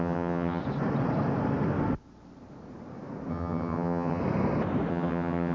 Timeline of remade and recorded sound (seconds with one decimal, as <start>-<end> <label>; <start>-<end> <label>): 0.0-0.6 remade; 0.6-3.3 recorded; 3.3-4.2 remade; 4.2-4.9 recorded; 4.9-5.5 remade